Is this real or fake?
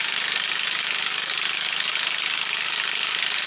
fake